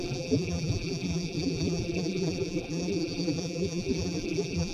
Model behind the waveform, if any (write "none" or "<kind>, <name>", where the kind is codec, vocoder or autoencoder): vocoder, BigVGAN v2